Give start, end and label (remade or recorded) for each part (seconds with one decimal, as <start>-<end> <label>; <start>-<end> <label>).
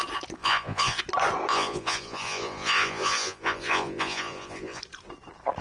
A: 0.0-0.4 recorded; 0.4-1.0 remade; 1.0-1.5 recorded; 1.5-4.8 remade; 4.8-5.6 recorded